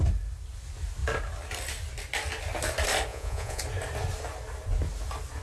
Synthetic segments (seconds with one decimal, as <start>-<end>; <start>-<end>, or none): 3.1-3.6